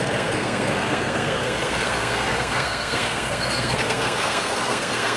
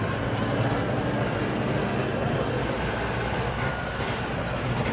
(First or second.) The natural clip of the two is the second